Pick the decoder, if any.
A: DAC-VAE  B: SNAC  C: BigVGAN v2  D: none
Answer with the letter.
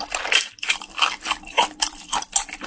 C